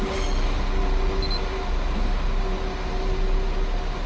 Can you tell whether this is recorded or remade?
recorded